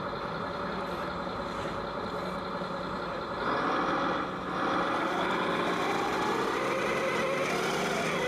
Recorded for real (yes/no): yes